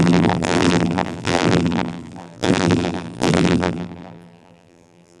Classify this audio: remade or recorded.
remade